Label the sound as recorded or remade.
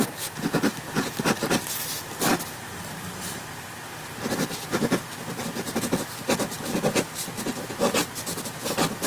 recorded